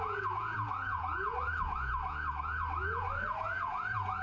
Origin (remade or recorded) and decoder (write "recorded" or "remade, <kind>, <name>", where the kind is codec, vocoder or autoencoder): remade, vocoder, Vocos